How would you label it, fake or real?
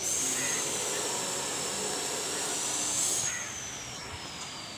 real